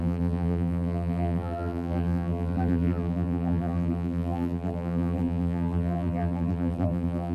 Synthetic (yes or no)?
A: yes